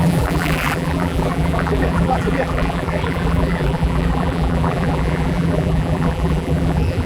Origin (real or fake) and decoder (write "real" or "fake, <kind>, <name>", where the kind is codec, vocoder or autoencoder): fake, vocoder, BigVGAN v2